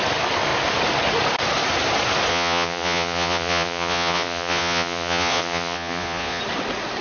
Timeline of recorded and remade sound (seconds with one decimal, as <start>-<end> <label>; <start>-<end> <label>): 0.0-2.3 recorded; 2.3-6.4 remade; 6.4-7.0 recorded